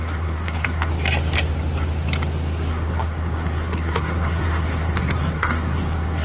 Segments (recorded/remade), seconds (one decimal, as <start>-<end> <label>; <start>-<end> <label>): 0.0-0.9 remade; 0.9-2.7 recorded; 2.7-6.2 remade

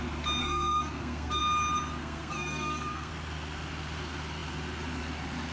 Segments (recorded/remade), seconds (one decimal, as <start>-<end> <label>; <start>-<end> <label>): 0.0-0.4 recorded; 0.4-1.4 remade; 1.4-2.0 recorded; 2.0-3.1 remade; 3.1-5.5 recorded

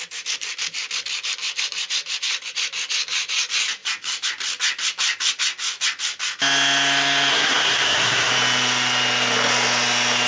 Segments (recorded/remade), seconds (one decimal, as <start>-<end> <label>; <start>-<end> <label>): 0.0-7.3 recorded; 7.3-8.3 remade; 8.3-10.3 recorded